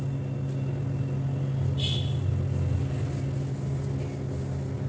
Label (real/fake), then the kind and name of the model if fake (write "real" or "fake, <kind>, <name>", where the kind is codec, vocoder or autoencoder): real